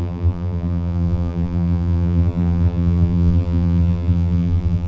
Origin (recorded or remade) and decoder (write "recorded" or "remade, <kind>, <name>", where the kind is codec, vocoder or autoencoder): remade, vocoder, BigVGAN v2